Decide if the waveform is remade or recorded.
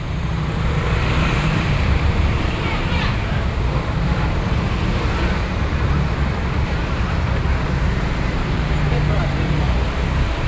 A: remade